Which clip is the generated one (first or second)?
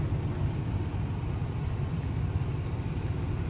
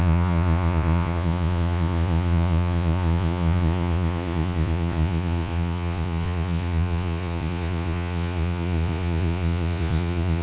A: second